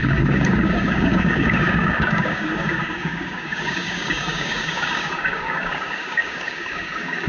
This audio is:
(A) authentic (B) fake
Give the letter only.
B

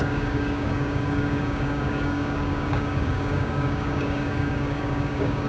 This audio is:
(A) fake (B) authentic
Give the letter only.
A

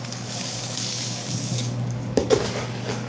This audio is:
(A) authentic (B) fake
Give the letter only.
B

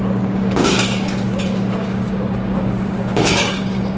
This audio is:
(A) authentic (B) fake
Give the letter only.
B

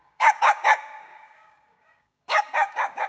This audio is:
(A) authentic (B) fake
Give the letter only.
B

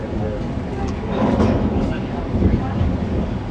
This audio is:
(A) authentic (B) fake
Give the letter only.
B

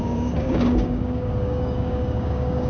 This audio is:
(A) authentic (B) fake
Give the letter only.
B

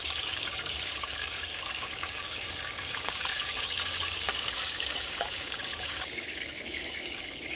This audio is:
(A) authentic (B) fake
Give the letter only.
B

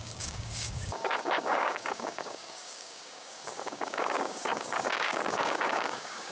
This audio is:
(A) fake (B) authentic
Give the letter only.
A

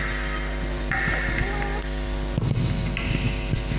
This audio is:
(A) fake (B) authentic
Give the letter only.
B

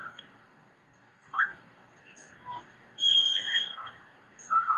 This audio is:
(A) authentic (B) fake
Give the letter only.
B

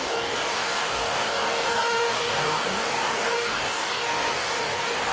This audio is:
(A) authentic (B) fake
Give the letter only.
B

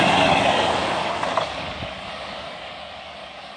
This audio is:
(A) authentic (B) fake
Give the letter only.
B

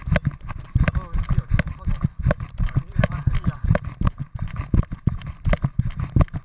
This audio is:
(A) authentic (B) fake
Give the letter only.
A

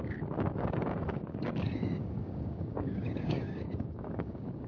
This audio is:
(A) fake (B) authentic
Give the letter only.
A